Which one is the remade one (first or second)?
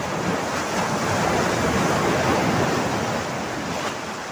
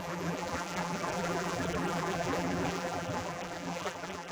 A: second